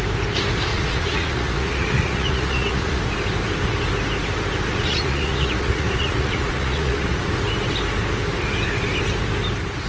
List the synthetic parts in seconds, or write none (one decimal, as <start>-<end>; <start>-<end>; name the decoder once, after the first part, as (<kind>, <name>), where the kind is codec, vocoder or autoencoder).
0.7-3.0 (vocoder, Vocos); 4.7-7.3